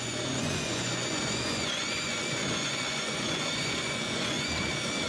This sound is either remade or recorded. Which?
remade